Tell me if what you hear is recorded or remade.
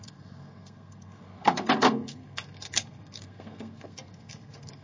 remade